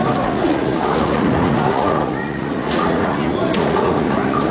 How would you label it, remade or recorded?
remade